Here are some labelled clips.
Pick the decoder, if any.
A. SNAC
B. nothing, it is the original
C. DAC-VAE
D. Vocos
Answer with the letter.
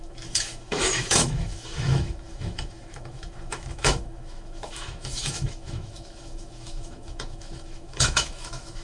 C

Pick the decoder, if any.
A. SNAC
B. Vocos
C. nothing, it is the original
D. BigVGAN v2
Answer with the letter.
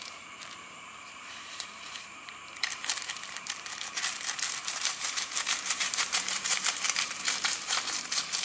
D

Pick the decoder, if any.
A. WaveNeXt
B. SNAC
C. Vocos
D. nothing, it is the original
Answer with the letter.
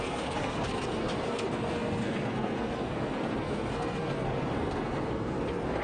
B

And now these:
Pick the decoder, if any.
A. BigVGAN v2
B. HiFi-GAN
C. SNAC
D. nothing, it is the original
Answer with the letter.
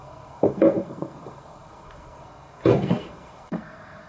C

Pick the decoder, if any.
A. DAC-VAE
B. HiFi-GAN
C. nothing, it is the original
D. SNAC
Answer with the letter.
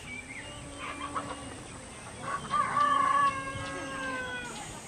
C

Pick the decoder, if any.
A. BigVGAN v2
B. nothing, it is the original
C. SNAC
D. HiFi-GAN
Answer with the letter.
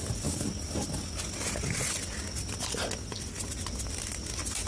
B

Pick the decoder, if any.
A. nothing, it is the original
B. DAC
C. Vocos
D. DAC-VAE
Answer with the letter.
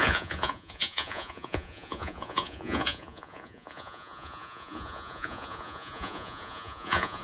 C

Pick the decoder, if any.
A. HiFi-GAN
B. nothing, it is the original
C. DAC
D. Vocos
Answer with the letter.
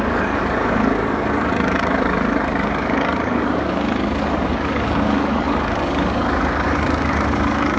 C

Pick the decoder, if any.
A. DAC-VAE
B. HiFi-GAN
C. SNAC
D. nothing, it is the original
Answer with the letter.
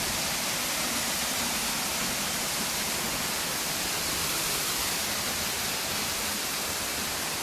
D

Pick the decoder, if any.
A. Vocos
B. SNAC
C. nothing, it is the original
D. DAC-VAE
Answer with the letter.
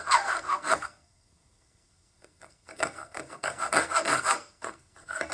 B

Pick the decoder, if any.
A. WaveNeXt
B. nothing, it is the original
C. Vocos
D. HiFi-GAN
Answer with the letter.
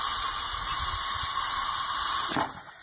B